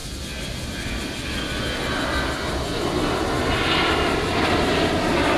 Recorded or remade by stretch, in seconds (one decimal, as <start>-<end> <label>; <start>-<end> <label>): 0.0-2.5 remade; 2.5-3.5 recorded; 3.5-5.4 remade